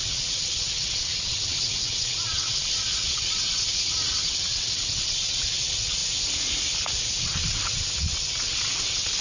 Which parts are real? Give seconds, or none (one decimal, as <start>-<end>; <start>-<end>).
6.0-7.2

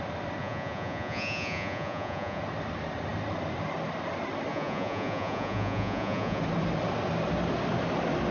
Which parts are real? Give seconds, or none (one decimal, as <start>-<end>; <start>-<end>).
0.0-0.4; 2.4-4.5; 6.4-8.3

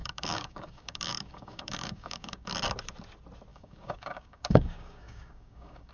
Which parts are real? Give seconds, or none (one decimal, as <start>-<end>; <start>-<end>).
2.5-3.5